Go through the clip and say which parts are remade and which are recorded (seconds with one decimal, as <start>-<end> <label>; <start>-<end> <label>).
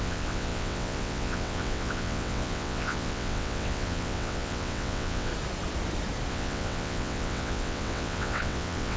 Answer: 0.0-5.3 remade; 5.3-6.3 recorded; 6.3-9.0 remade